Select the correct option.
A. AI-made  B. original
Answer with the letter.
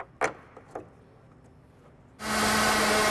B